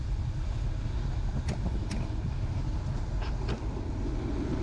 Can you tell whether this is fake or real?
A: real